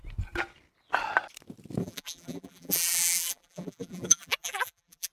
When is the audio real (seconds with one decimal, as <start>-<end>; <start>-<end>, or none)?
0.0-1.8